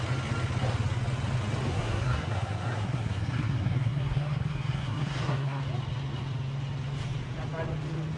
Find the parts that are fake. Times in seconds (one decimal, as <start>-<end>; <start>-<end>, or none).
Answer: 1.7-5.6